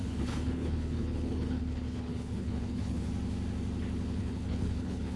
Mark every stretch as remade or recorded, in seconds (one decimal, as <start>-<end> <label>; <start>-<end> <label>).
0.0-3.1 remade; 3.1-4.2 recorded; 4.2-5.2 remade